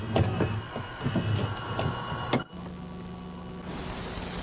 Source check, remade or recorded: recorded